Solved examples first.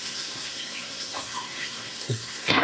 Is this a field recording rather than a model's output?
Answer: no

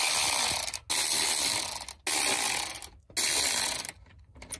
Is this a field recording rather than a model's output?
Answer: yes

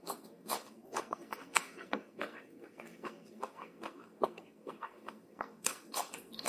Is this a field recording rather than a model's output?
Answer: no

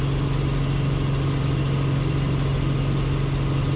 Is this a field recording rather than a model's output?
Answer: yes